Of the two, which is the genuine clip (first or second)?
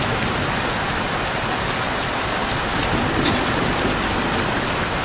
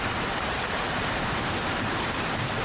first